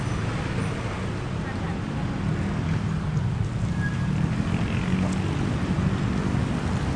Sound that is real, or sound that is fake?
real